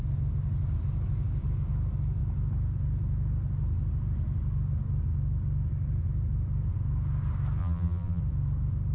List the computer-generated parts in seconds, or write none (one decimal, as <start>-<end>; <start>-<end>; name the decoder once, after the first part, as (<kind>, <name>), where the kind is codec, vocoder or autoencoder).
7.6-8.2 (vocoder, BigVGAN v2)